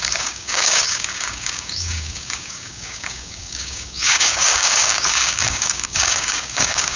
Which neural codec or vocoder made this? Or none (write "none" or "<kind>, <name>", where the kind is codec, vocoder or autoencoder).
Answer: codec, DAC